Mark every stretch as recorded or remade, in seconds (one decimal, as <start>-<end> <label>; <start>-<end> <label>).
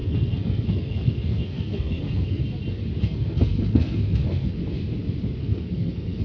0.0-2.4 remade; 2.4-3.0 recorded; 3.0-4.6 remade; 4.6-5.4 recorded; 5.4-6.2 remade